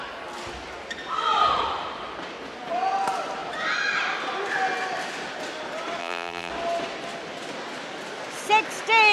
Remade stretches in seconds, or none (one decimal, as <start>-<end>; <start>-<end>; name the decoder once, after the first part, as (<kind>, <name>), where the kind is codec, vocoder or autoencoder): 6.0-6.5 (vocoder, BigVGAN v2)